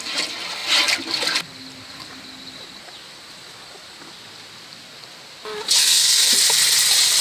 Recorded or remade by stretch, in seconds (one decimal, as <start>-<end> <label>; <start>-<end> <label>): 0.0-5.8 recorded; 5.8-6.3 remade; 6.3-7.2 recorded